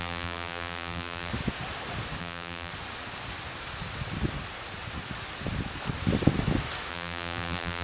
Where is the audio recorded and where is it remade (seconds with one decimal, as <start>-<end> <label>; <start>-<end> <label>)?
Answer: 0.0-1.3 remade; 1.3-2.2 recorded; 2.2-2.7 remade; 2.7-6.9 recorded; 6.9-7.8 remade